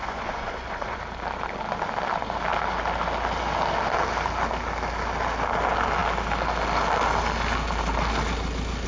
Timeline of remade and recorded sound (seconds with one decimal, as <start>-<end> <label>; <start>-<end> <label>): 0.0-1.0 remade; 1.0-8.9 recorded